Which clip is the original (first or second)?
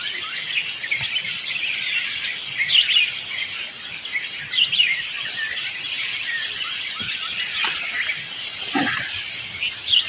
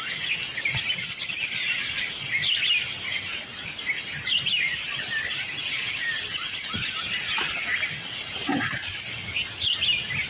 second